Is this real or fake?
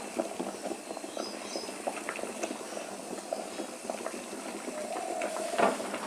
real